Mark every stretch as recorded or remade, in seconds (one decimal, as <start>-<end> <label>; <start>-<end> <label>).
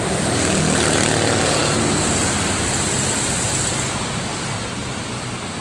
0.0-5.6 recorded